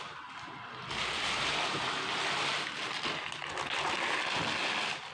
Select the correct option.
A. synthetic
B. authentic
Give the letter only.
B